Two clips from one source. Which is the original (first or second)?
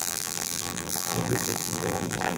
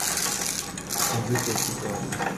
second